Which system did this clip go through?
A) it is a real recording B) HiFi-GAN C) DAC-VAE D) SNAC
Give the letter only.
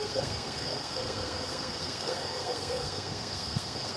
D